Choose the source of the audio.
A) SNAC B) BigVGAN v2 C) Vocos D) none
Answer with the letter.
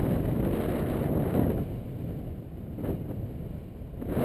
D